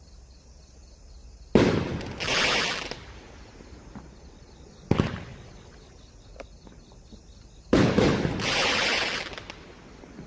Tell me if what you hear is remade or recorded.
recorded